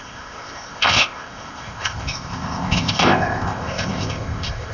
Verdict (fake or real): fake